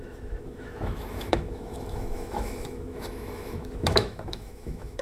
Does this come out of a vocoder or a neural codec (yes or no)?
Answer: yes